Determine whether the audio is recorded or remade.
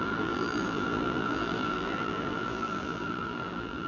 remade